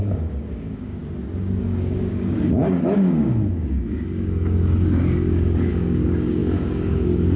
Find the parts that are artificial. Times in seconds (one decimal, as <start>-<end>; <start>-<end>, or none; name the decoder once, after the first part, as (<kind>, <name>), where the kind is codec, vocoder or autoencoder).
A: 0.0-1.0 (codec, DAC); 1.6-7.4